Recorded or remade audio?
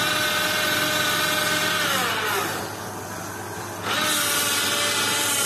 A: recorded